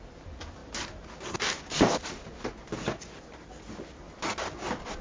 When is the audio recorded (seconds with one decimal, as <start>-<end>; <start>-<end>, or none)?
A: 0.0-5.0